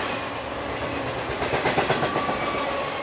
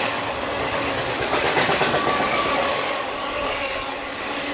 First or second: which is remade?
second